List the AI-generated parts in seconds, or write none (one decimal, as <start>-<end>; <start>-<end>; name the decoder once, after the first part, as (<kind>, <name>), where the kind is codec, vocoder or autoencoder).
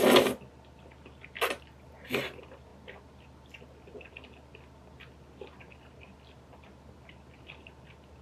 none